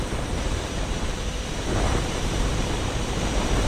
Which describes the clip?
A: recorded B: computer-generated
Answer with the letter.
B